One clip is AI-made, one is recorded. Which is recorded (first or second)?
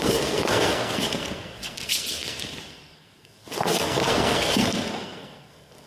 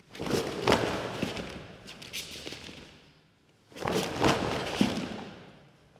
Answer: second